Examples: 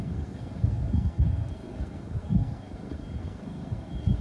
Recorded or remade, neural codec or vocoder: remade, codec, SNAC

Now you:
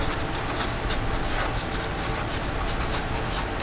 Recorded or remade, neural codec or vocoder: recorded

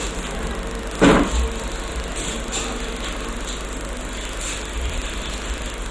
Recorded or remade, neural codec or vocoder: recorded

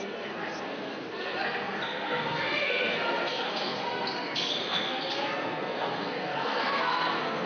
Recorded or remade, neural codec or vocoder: remade, codec, SNAC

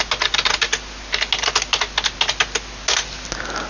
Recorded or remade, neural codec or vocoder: recorded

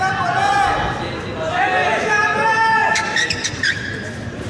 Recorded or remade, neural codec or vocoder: recorded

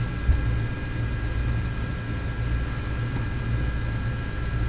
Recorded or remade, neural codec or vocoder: recorded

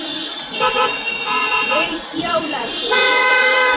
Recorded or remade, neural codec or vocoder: remade, vocoder, Vocos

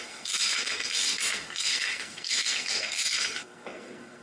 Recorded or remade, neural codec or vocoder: remade, codec, SNAC